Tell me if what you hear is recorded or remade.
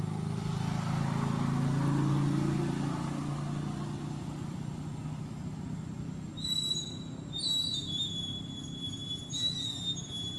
recorded